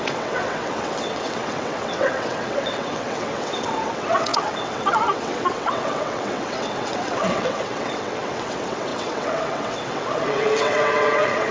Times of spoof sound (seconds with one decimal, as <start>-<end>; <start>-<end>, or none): 0.0-11.5